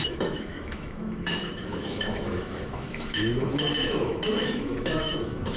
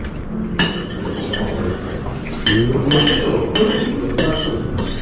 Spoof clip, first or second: first